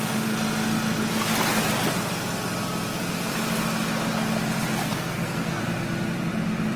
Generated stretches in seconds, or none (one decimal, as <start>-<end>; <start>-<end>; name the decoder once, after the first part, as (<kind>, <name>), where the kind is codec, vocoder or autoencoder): 4.8-5.6 (codec, SNAC)